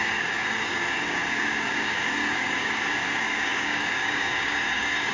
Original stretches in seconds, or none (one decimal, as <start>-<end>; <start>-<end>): none